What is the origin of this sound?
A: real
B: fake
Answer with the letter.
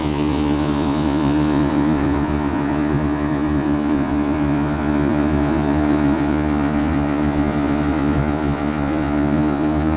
B